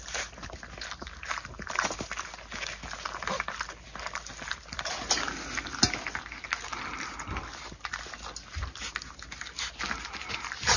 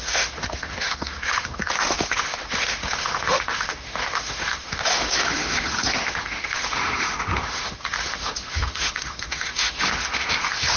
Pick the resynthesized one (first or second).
second